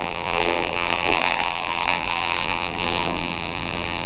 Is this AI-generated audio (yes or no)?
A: yes